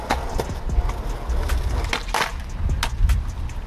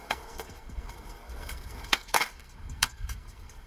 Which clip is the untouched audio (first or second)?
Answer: first